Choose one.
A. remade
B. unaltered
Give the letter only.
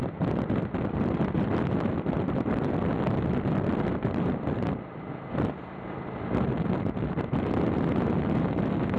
A